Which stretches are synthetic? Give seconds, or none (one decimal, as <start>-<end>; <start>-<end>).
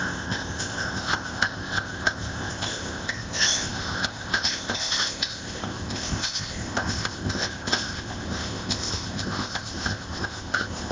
0.0-10.9